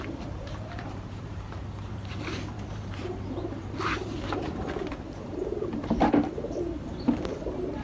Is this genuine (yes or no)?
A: no